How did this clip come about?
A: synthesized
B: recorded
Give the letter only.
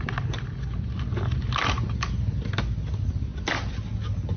B